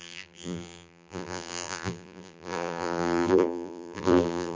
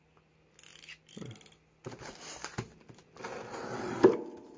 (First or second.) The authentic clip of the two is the second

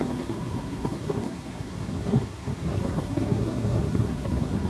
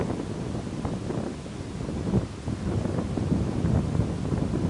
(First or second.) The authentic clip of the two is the second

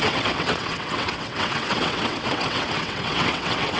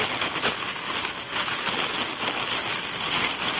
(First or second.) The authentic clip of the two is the second